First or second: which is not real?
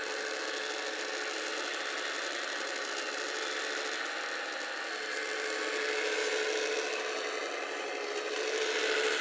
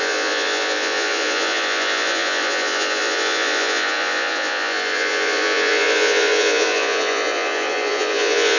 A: second